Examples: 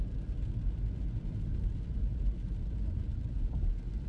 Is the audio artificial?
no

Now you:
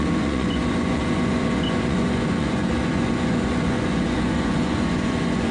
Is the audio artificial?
yes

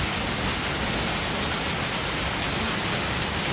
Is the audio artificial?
no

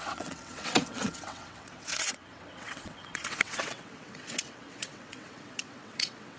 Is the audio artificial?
yes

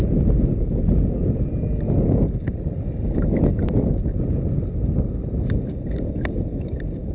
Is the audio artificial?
no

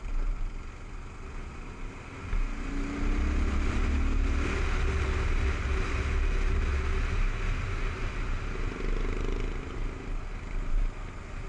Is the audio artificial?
no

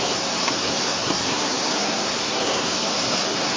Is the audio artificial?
yes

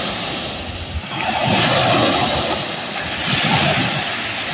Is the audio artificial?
no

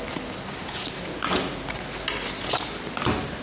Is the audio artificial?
no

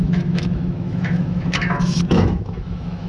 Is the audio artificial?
yes